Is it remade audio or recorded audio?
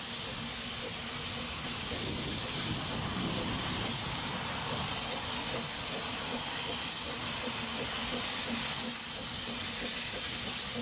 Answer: recorded